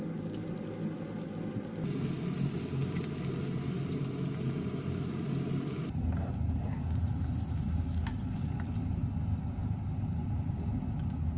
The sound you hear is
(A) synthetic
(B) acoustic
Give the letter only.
B